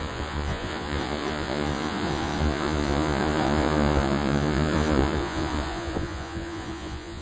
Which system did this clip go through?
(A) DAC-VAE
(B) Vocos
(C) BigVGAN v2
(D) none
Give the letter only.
B